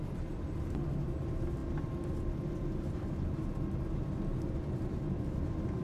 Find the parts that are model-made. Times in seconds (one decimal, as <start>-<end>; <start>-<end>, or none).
none